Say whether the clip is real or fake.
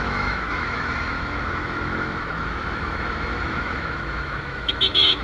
fake